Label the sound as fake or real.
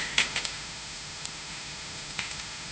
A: fake